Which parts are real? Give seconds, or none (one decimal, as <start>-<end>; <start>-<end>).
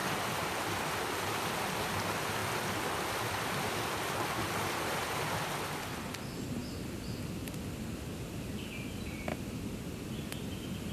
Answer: 1.0-2.4; 5.1-10.9